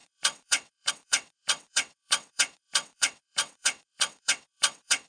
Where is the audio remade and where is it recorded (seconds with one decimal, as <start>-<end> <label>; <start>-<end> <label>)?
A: 0.0-5.1 remade